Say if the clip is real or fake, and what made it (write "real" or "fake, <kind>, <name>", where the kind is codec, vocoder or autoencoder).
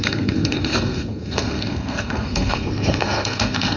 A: fake, codec, SNAC